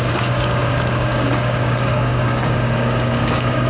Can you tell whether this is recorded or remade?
remade